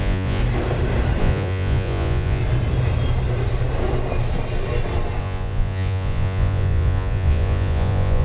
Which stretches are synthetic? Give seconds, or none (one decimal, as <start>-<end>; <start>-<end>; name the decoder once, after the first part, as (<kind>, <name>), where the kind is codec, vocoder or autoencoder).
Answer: 0.0-0.4 (vocoder, Vocos); 1.2-2.4; 5.2-8.2